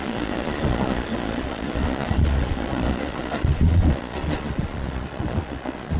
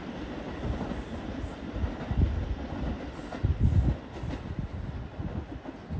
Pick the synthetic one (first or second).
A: first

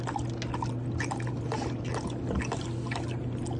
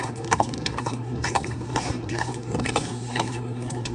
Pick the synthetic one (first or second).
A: second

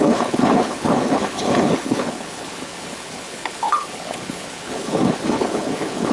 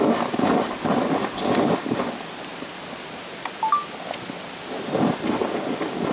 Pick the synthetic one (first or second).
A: first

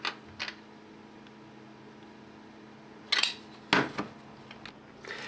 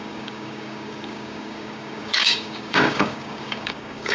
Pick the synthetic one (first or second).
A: second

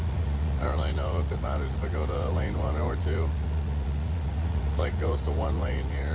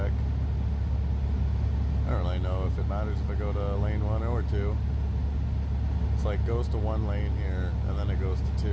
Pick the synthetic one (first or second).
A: first